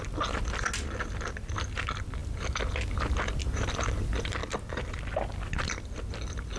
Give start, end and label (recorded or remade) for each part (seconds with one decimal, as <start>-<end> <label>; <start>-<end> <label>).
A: 0.0-6.6 recorded